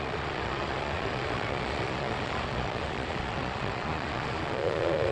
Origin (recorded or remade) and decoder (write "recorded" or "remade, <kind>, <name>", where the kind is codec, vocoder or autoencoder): remade, vocoder, Vocos